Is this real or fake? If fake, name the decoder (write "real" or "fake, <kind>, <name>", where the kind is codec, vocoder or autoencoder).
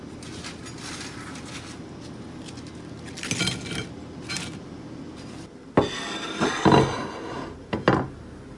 real